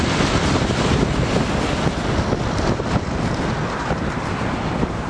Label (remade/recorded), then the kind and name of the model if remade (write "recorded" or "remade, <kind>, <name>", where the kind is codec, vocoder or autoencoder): recorded